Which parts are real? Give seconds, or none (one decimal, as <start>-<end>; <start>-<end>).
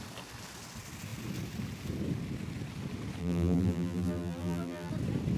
0.0-3.2; 4.9-5.4